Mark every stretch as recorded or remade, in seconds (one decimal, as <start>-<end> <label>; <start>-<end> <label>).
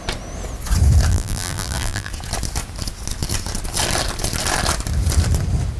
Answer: 0.0-1.1 recorded; 1.1-2.1 remade; 2.1-5.8 recorded